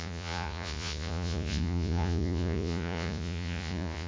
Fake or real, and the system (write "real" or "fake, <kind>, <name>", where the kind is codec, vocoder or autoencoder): fake, vocoder, Vocos